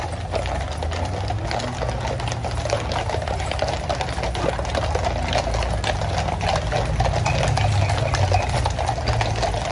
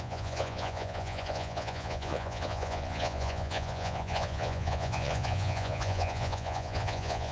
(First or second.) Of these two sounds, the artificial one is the second